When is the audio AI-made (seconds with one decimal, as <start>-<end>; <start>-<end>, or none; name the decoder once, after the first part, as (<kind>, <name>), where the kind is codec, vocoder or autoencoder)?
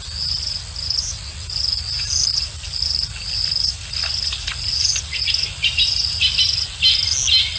2.3-6.8 (vocoder, BigVGAN v2)